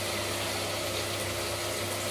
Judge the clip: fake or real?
real